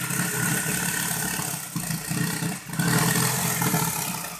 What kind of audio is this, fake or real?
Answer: real